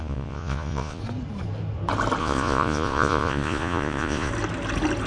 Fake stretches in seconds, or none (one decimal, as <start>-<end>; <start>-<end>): 0.0-1.0; 2.2-4.3